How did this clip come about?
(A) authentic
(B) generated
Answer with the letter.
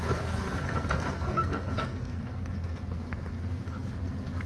B